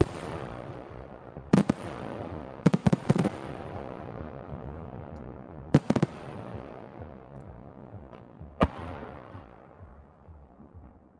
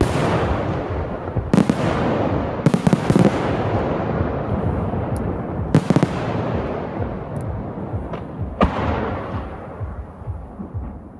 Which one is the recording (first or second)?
second